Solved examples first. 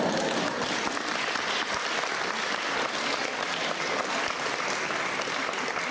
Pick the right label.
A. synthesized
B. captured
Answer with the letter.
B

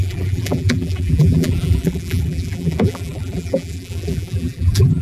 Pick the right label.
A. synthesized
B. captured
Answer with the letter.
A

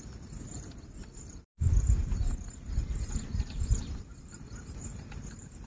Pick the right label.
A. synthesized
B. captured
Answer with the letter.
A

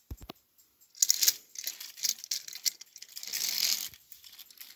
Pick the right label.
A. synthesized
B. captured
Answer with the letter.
B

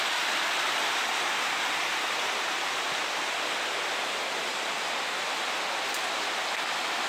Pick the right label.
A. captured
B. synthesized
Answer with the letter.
A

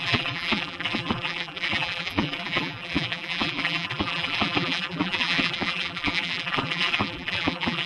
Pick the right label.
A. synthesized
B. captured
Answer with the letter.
A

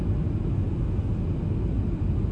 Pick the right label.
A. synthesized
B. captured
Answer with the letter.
B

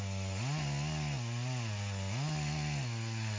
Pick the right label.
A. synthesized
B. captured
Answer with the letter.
B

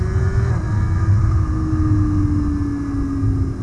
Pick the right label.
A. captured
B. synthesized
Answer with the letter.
A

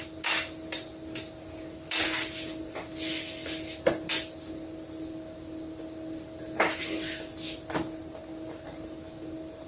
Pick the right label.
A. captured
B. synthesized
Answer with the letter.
A